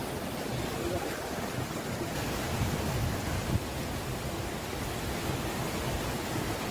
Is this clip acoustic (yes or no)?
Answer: yes